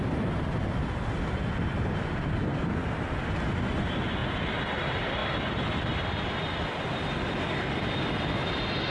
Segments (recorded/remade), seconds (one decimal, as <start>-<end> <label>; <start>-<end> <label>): 0.0-5.2 recorded; 5.2-8.3 remade; 8.3-8.9 recorded

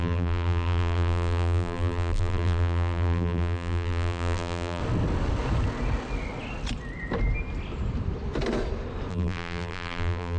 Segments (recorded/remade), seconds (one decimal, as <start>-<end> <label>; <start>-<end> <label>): 0.0-4.8 remade; 4.8-9.1 recorded; 9.1-10.4 remade